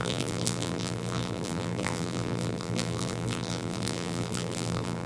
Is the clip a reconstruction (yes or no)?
yes